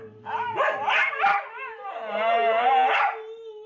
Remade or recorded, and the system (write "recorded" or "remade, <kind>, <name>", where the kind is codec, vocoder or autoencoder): recorded